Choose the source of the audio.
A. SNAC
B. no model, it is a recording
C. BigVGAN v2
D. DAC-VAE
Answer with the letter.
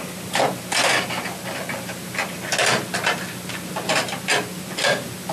B